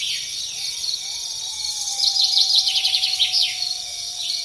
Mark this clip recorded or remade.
remade